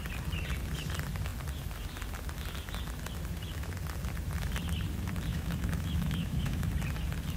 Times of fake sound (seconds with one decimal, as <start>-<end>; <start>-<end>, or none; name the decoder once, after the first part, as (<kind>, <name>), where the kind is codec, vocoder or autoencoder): 5.3-6.7 (autoencoder, DAC-VAE)